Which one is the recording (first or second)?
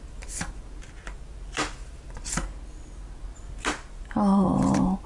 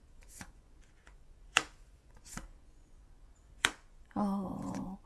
first